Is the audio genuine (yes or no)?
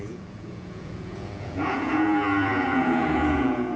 no